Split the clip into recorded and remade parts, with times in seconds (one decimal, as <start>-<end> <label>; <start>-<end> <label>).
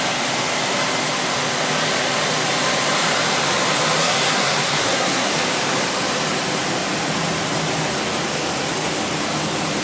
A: 0.0-4.0 recorded; 4.0-5.3 remade; 5.3-9.8 recorded